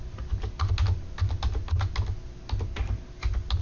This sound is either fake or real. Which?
real